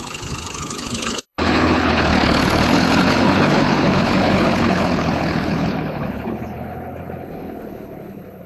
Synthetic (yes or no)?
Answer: yes